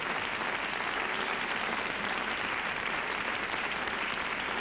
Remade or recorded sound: recorded